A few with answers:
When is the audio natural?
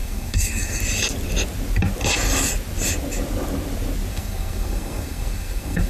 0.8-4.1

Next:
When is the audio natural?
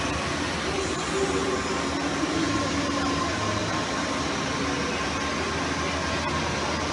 0.0-6.9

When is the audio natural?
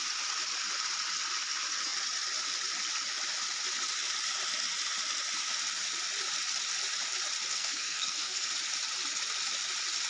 0.0-7.5; 8.5-10.1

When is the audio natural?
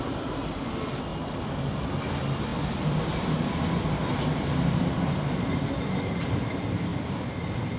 0.0-6.9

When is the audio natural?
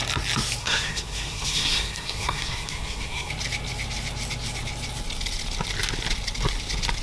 0.0-0.6; 3.3-7.0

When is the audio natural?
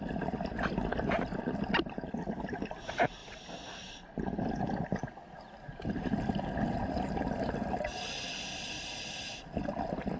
0.0-10.2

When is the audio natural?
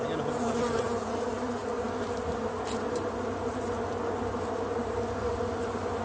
0.0-6.0